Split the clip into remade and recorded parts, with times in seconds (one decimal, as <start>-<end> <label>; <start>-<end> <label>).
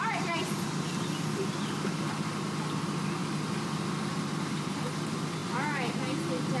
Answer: 0.0-6.6 recorded